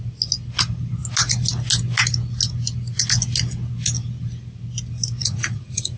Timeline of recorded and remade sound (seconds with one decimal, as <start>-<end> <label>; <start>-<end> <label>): 0.0-5.2 recorded; 5.2-6.0 remade